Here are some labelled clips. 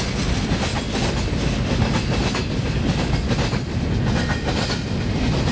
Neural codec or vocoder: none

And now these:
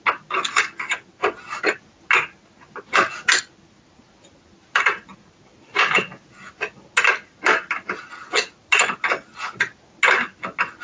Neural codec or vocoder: none